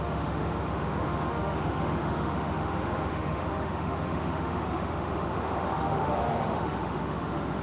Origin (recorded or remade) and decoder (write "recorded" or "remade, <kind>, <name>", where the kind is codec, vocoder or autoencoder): remade, autoencoder, DAC-VAE